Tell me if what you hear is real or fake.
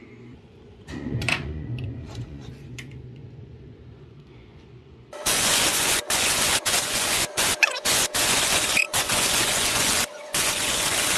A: fake